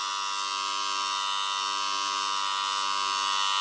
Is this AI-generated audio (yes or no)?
no